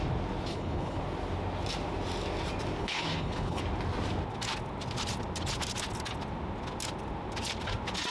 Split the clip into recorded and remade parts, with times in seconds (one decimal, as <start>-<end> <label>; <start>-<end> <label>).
0.0-0.5 recorded; 0.5-1.0 remade; 1.0-2.8 recorded; 2.8-3.6 remade; 3.6-8.1 recorded